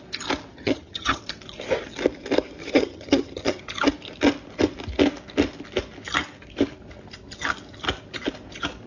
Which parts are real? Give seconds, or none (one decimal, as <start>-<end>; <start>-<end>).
0.0-0.5; 1.2-2.6; 3.6-8.9